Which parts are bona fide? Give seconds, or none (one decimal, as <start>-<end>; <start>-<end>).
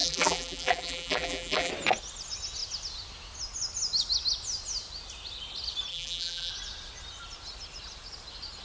1.7-5.9; 6.5-8.6